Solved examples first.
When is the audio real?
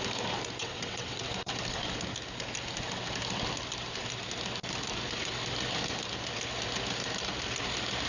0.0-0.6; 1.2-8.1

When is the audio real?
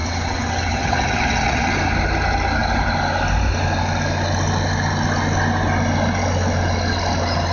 1.7-7.5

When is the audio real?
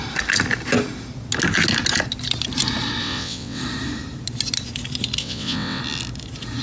0.0-3.0; 3.6-5.2; 5.8-6.6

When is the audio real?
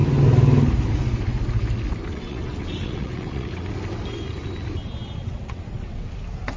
0.0-2.1; 3.7-5.2; 6.1-6.6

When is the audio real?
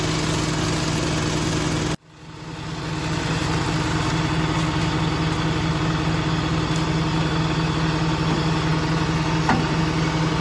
0.0-10.4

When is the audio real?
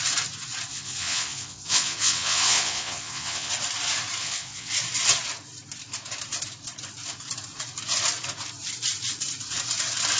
0.0-0.7; 3.5-4.2; 4.7-10.2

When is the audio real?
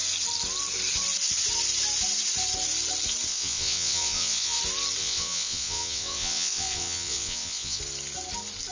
0.0-3.3; 4.6-5.0; 7.8-8.7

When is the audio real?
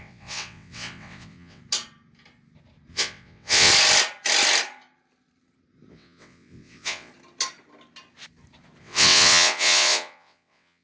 1.6-2.9; 3.7-5.9; 7.1-8.8